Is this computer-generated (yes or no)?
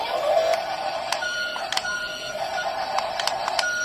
no